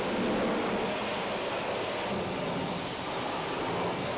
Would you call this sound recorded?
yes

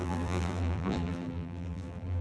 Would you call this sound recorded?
no